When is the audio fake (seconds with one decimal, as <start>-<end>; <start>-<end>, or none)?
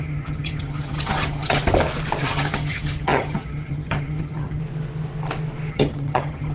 0.0-1.6; 2.2-4.6; 5.7-6.5